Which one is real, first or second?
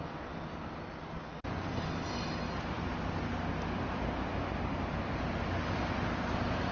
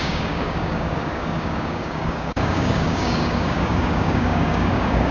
first